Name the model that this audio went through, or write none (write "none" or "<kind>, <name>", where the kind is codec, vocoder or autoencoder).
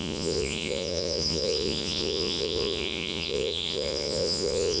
vocoder, Vocos